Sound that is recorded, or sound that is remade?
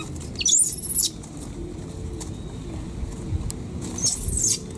recorded